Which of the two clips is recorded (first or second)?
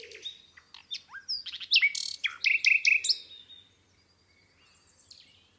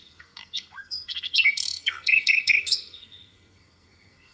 first